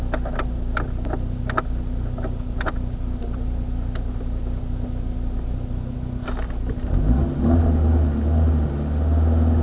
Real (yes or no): yes